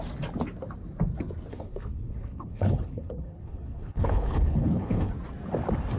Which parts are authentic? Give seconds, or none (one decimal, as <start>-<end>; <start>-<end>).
0.0-1.5; 5.1-6.0